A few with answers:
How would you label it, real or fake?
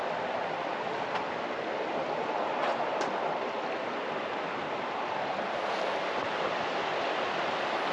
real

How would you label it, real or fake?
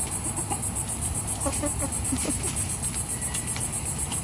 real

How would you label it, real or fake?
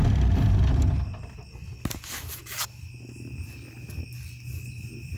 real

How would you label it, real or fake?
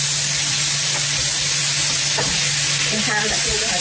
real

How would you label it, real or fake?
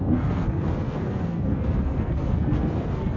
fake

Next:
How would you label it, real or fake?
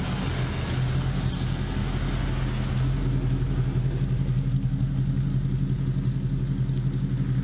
real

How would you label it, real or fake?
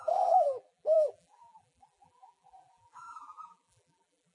fake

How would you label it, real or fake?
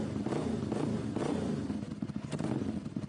real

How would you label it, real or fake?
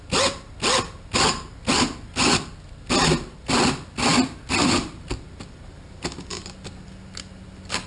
real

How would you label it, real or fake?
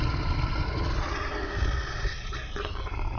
real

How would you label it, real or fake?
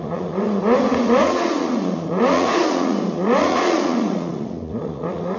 fake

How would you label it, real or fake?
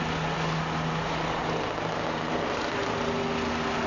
real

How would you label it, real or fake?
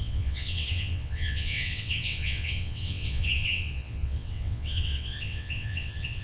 fake